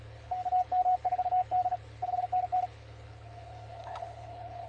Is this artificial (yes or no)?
yes